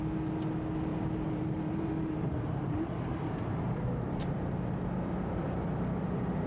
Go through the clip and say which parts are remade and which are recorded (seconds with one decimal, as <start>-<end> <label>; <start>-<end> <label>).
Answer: 0.0-0.9 recorded; 0.9-4.3 remade; 4.3-6.5 recorded